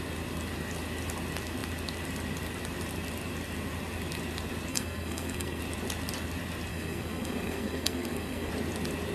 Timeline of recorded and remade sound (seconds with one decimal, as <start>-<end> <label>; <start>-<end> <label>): 0.0-4.7 recorded; 4.7-5.6 remade; 5.6-6.7 recorded; 6.7-8.5 remade; 8.5-9.1 recorded